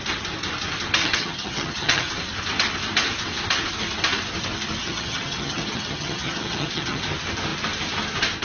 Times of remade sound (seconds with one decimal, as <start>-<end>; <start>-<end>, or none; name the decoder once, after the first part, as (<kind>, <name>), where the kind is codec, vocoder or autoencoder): 1.0-2.1 (vocoder, HiFi-GAN); 4.8-7.0